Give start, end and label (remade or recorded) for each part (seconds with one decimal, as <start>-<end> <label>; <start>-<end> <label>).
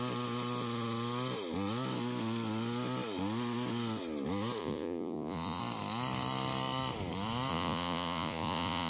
0.0-4.6 recorded; 4.6-5.6 remade; 5.6-7.5 recorded; 7.5-8.9 remade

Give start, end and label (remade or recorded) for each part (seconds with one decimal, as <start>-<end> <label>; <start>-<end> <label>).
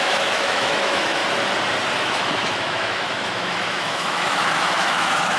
0.0-1.2 remade; 1.2-2.0 recorded; 2.0-5.4 remade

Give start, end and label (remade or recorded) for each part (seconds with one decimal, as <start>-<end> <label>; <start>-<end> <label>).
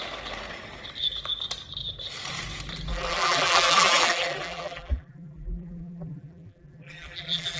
0.0-2.9 recorded; 2.9-7.6 remade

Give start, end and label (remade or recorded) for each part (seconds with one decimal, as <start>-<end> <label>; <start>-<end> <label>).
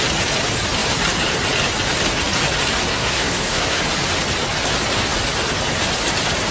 0.0-2.9 recorded; 2.9-3.8 remade; 3.8-6.5 recorded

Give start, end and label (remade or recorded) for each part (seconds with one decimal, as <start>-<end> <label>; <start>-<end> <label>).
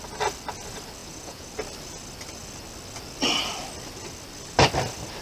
0.0-1.0 recorded; 1.0-1.5 remade; 1.5-5.2 recorded